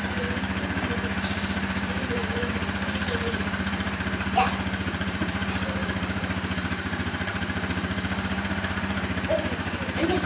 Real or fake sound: fake